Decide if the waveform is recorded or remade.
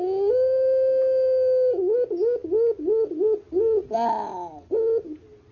recorded